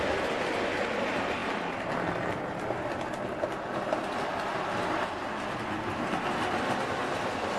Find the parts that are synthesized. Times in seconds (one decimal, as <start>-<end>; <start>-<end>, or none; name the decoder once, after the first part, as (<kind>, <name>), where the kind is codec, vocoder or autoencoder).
none